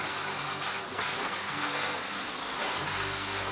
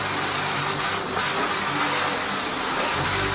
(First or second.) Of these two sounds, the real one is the second